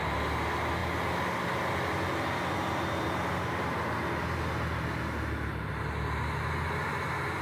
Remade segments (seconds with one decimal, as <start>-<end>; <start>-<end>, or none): none